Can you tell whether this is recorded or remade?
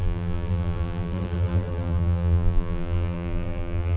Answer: remade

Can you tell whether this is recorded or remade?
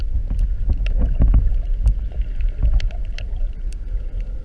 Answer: recorded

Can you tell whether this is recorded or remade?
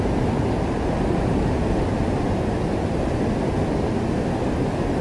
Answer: recorded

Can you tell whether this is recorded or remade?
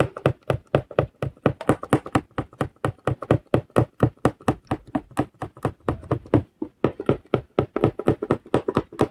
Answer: recorded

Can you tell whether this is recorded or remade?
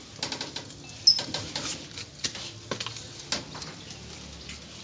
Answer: recorded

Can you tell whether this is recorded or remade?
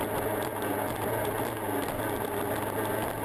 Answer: recorded